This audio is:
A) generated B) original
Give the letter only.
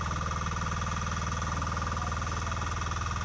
B